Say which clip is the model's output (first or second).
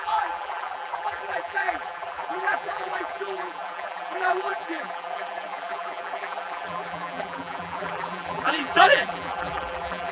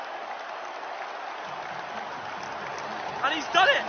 first